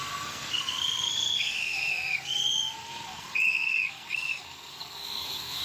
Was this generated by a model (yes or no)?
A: yes